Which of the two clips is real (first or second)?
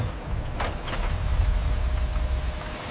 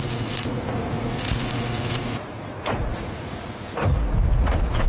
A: first